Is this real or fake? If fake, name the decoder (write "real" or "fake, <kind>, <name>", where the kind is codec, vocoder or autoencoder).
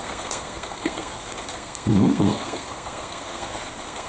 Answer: fake, codec, SNAC